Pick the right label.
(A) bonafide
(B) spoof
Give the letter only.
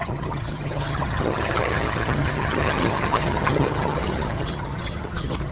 B